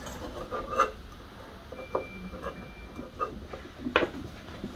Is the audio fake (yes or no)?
no